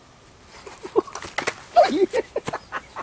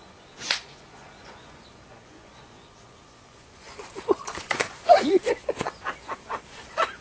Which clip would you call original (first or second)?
first